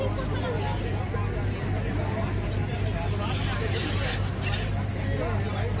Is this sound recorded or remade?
recorded